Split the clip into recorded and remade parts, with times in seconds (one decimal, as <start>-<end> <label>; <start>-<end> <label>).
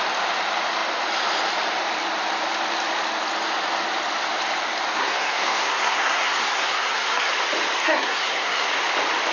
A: 0.0-5.0 recorded; 5.0-7.3 remade; 7.3-7.8 recorded; 7.8-8.7 remade; 8.7-9.3 recorded